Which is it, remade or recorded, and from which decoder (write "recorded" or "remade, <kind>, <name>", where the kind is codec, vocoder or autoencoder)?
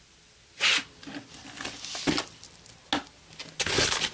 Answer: recorded